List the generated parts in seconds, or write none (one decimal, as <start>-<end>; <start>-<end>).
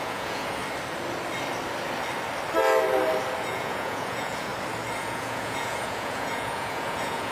0.0-0.6; 3.4-4.5; 5.0-7.3